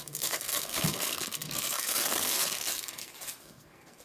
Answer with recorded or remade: remade